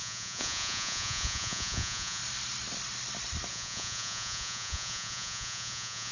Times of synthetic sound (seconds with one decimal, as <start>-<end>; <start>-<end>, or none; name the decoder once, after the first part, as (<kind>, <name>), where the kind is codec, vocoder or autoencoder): 0.0-2.2 (vocoder, Vocos); 3.5-6.1